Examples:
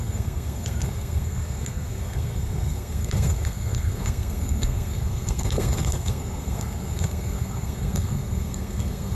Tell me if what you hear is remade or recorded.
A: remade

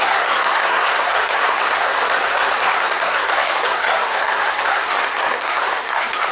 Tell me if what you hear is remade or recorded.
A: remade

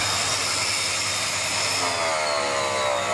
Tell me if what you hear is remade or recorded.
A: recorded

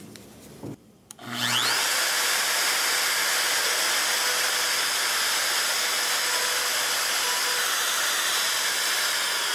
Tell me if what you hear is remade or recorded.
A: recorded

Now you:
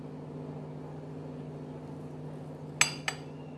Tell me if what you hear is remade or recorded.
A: recorded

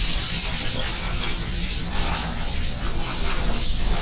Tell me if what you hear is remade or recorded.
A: recorded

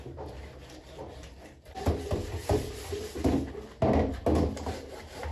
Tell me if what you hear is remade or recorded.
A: recorded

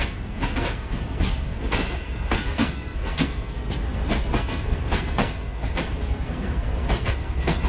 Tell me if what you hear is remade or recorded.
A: remade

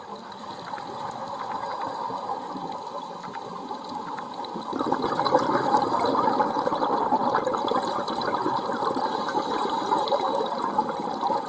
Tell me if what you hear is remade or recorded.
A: recorded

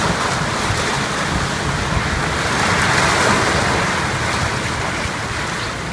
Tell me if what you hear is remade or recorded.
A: recorded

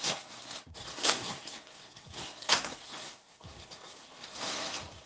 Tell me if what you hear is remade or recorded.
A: remade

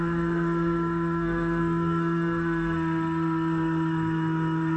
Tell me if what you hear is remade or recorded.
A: remade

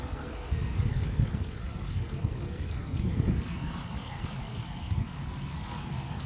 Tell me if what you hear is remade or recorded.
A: remade